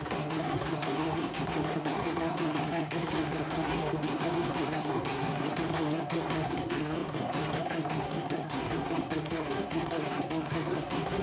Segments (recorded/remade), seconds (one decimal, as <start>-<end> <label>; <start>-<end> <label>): 0.0-11.2 remade